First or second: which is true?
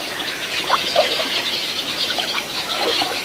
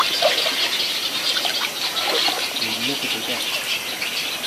second